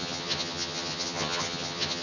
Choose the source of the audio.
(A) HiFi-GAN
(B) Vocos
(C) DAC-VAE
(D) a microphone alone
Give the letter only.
A